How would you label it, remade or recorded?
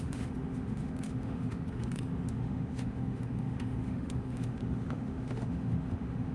remade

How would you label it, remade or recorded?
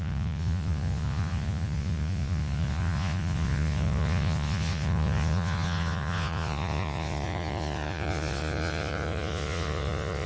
remade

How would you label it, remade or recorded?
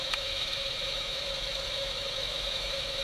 remade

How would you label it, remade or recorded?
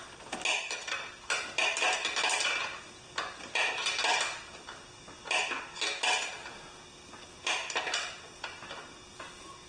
recorded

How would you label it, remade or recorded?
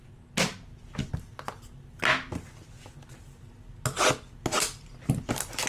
recorded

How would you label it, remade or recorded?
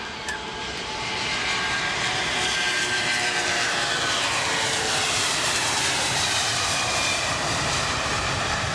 remade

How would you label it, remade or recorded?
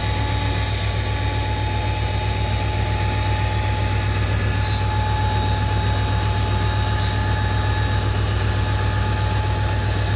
recorded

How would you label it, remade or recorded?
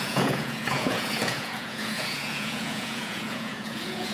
remade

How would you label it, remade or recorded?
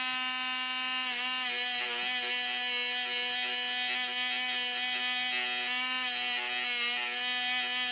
recorded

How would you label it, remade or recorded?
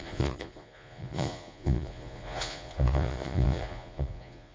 remade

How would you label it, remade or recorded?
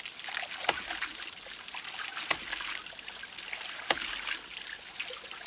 recorded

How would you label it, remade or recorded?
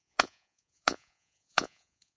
remade